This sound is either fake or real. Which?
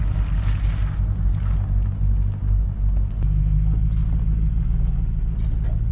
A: real